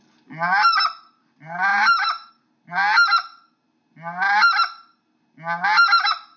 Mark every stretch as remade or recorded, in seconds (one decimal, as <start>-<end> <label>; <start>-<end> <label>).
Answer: 0.0-1.7 recorded; 1.7-2.3 remade; 2.3-6.4 recorded

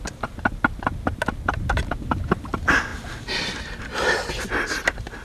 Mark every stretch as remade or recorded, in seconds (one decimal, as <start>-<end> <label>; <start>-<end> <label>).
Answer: 0.0-5.2 recorded

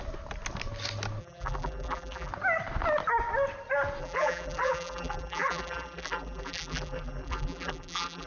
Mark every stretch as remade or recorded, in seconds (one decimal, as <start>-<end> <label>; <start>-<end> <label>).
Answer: 0.0-1.2 recorded; 1.2-2.3 remade; 2.3-4.0 recorded; 4.0-8.3 remade

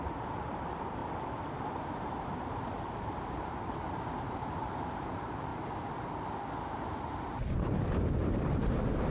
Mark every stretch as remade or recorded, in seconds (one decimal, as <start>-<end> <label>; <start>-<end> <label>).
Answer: 0.0-1.0 remade; 1.0-2.2 recorded; 2.2-5.5 remade; 5.5-6.9 recorded; 6.9-9.1 remade

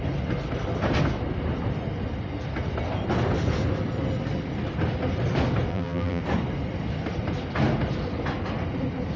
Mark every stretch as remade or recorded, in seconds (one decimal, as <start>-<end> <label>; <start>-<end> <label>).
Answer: 0.0-5.7 recorded; 5.7-6.2 remade; 6.2-9.2 recorded

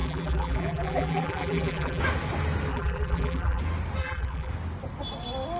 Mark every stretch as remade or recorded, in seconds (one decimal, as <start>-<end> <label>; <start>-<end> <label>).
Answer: 0.0-2.0 remade; 2.0-2.7 recorded; 2.7-3.6 remade; 3.6-4.0 recorded; 4.0-4.5 remade; 4.5-5.6 recorded

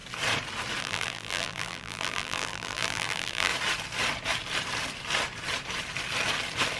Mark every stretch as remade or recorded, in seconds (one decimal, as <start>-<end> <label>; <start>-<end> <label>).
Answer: 0.0-0.8 recorded; 0.8-3.5 remade; 3.5-6.8 recorded

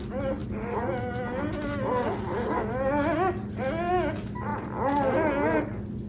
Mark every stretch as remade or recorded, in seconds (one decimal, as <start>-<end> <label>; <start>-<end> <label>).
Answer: 0.0-6.1 recorded